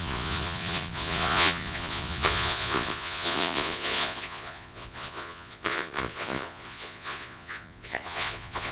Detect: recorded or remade remade